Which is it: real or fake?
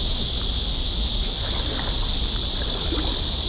real